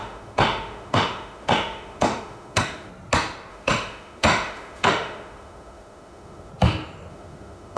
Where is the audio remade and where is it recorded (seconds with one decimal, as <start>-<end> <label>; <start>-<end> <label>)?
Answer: 0.0-2.9 remade; 2.9-3.5 recorded; 3.5-6.5 remade; 6.5-7.1 recorded; 7.1-7.8 remade

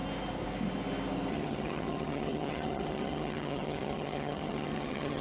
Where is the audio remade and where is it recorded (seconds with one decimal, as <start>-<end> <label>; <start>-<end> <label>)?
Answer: 0.0-1.3 recorded; 1.3-5.2 remade

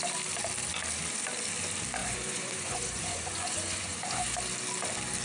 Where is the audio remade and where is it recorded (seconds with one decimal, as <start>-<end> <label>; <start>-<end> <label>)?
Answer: 0.0-2.0 recorded; 2.0-4.4 remade; 4.4-5.2 recorded

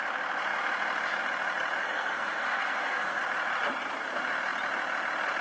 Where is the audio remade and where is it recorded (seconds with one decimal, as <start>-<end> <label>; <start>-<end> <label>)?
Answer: 0.0-1.8 recorded; 1.8-3.2 remade; 3.2-5.4 recorded

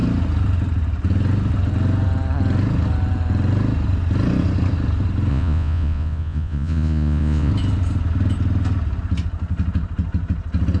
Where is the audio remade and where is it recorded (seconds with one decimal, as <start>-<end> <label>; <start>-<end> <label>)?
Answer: 0.0-5.3 recorded; 5.3-7.5 remade; 7.5-10.8 recorded